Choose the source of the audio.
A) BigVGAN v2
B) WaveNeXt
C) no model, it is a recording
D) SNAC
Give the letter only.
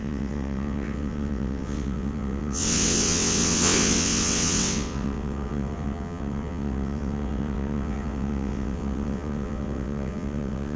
B